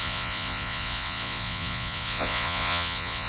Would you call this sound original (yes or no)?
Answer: no